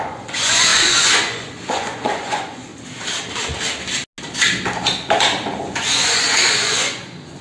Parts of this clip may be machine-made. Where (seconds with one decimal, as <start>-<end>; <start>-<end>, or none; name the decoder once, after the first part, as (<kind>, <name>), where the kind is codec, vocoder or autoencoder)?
0.0-2.7 (vocoder, Vocos); 5.6-7.4

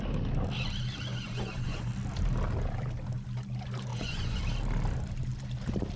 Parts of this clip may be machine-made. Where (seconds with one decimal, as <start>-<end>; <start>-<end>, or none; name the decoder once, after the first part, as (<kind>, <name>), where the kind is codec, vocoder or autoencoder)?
1.1-1.9 (vocoder, Vocos); 3.9-4.4

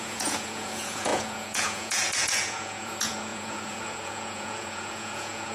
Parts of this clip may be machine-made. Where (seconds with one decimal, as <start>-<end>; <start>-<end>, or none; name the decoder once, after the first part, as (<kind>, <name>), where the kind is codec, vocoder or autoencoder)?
0.0-5.5 (vocoder, Vocos)

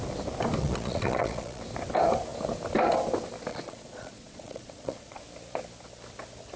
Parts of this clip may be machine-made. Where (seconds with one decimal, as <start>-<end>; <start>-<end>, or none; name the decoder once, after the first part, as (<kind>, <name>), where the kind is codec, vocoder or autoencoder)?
0.6-1.6 (vocoder, Vocos); 3.5-5.2